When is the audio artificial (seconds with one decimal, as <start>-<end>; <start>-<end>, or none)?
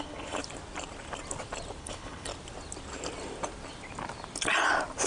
0.0-0.4; 1.8-2.3